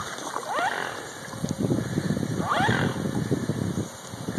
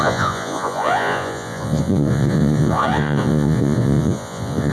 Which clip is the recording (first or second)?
first